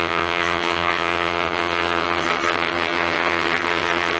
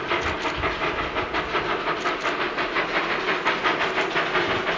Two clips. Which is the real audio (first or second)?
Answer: second